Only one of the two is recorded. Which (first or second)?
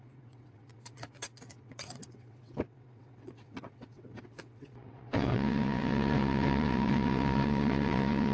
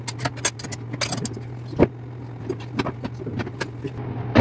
second